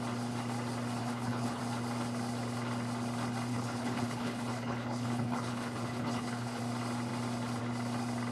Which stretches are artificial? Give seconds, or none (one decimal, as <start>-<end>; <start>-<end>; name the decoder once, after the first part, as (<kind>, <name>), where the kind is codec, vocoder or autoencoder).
1.0-1.6 (codec, HILCodec); 3.5-6.6